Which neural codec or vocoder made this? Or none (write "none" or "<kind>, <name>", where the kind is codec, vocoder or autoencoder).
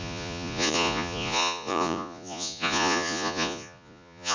vocoder, Vocos